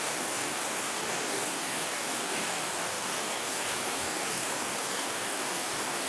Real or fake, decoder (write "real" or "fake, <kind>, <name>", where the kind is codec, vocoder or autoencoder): fake, codec, DAC